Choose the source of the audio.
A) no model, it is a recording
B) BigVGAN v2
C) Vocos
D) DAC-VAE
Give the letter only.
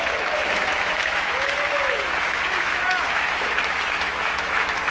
D